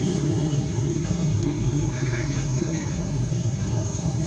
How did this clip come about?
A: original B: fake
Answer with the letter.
B